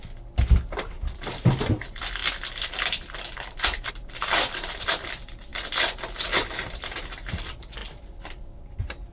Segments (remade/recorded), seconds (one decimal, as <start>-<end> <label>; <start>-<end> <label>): 0.0-9.1 recorded